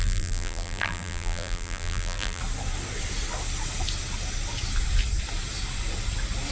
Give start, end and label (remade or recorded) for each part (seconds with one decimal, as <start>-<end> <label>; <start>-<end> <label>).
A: 0.0-2.4 remade; 2.4-6.5 recorded